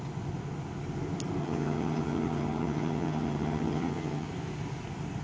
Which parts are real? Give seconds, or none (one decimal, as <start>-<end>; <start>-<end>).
0.0-1.4; 4.3-5.2